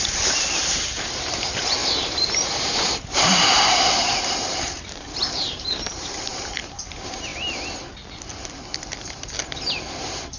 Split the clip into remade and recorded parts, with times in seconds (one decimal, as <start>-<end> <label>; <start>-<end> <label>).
0.0-7.3 remade; 7.3-8.8 recorded; 8.8-10.4 remade